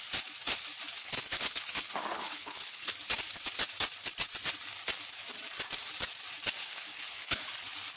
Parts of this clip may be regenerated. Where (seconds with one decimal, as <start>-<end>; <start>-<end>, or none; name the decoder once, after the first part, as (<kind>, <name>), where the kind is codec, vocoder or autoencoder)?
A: 1.0-2.9 (codec, HILCodec); 6.6-7.4